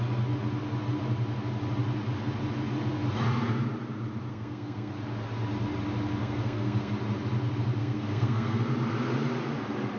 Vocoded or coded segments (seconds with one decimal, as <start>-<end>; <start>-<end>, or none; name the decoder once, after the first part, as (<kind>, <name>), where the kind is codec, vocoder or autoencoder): 4.3-4.9 (codec, SNAC); 6.2-6.9; 7.8-8.6